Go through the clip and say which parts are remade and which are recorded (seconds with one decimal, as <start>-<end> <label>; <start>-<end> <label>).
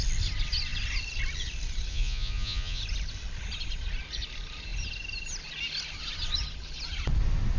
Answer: 0.0-1.9 recorded; 1.9-2.8 remade; 2.8-7.6 recorded